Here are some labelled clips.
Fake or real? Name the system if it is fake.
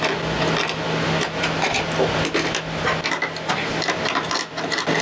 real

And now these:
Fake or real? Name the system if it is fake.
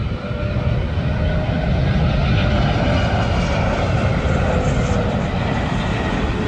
real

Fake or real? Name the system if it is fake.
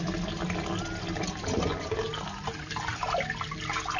real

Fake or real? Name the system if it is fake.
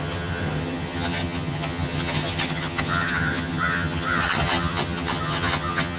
fake, vocoder, HiFi-GAN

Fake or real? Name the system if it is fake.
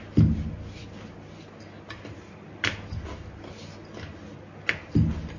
real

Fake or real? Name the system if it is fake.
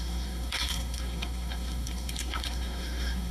fake, codec, SNAC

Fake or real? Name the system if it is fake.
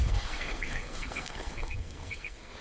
fake, codec, SNAC